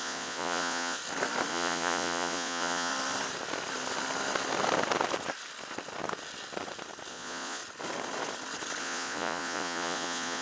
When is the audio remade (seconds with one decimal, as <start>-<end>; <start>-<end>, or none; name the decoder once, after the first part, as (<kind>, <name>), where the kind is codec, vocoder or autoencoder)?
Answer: 0.0-1.0 (vocoder, Vocos); 1.5-2.9; 7.1-7.6; 8.8-10.4